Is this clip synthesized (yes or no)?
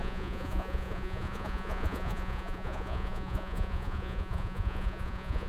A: yes